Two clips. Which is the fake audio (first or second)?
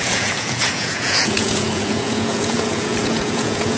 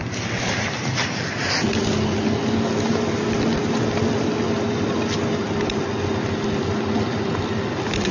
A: first